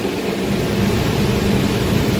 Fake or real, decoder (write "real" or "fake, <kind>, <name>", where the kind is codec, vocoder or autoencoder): real